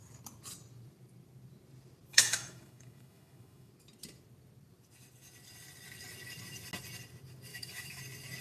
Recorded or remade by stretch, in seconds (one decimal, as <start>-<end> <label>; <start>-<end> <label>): 0.0-2.1 recorded; 2.1-3.7 remade; 3.7-7.5 recorded; 7.5-8.0 remade; 8.0-8.4 recorded